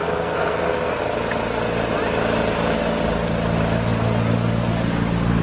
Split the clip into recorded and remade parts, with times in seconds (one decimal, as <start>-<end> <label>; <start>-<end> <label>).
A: 0.0-1.0 remade; 1.0-5.4 recorded

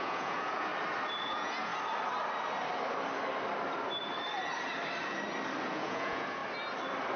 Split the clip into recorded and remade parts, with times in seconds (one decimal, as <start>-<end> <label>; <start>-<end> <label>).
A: 0.0-0.7 remade; 0.7-1.2 recorded; 1.2-1.7 remade; 1.7-5.6 recorded; 5.6-6.4 remade; 6.4-7.2 recorded

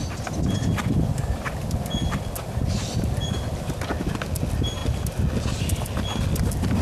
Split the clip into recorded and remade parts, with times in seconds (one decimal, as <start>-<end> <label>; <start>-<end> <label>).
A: 0.0-6.8 recorded

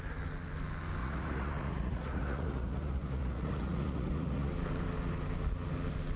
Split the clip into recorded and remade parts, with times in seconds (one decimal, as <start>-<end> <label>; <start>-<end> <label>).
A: 0.0-1.0 recorded; 1.0-4.5 remade; 4.5-6.2 recorded

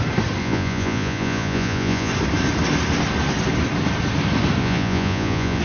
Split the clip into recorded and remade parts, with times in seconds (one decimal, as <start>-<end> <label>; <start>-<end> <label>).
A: 0.0-0.4 recorded; 0.4-2.1 remade; 2.1-4.6 recorded; 4.6-5.6 remade

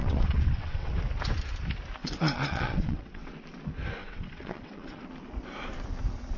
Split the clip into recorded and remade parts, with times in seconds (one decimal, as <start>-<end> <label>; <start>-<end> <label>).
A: 0.0-0.9 remade; 0.9-2.0 recorded; 2.0-3.3 remade; 3.3-4.0 recorded; 4.0-5.0 remade; 5.0-6.4 recorded